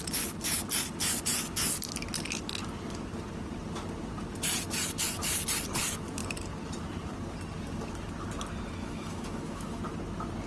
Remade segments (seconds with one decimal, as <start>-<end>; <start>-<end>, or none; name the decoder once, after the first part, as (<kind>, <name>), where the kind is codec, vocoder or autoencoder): 8.8-9.8 (autoencoder, DAC-VAE)